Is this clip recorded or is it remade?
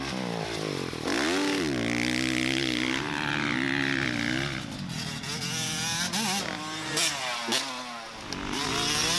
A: recorded